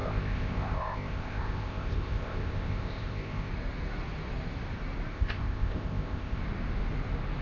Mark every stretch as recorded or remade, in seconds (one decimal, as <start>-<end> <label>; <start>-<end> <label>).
0.0-3.5 remade; 3.5-5.1 recorded; 5.1-6.4 remade; 6.4-7.4 recorded